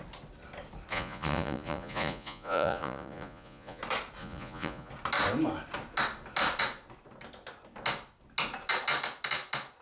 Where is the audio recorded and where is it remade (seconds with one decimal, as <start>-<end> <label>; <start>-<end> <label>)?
0.0-0.9 recorded; 0.9-3.8 remade; 3.8-4.2 recorded; 4.2-4.9 remade; 4.9-9.8 recorded